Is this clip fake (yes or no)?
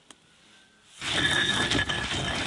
no